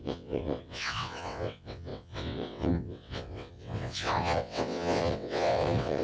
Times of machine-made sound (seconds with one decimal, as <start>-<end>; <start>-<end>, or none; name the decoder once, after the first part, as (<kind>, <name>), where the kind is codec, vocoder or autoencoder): 0.0-6.0 (vocoder, WaveNeXt)